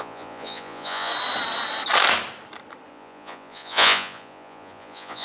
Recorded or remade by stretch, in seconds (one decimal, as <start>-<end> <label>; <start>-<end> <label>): 0.0-1.1 remade; 1.1-2.9 recorded; 2.9-5.2 remade